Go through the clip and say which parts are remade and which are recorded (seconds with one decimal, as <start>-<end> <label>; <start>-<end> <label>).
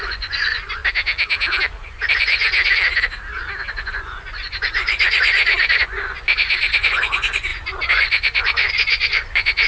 0.0-0.8 remade; 0.8-1.7 recorded; 1.7-2.4 remade; 2.4-3.7 recorded; 3.7-9.7 remade